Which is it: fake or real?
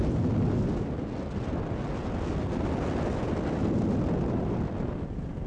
real